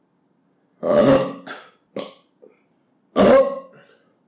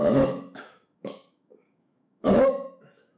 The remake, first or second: second